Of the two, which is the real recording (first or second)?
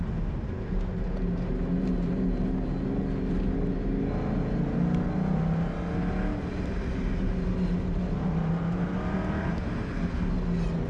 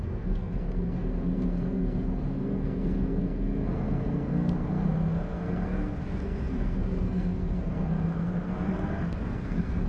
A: first